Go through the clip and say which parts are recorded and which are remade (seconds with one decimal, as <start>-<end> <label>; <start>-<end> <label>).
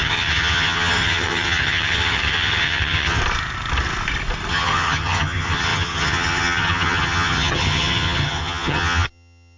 0.0-3.2 remade; 3.2-4.5 recorded; 4.5-9.6 remade